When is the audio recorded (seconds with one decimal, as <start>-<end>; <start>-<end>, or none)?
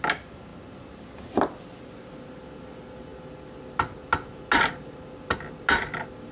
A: 0.0-6.3